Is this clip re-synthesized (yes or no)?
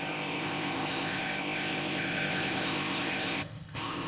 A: yes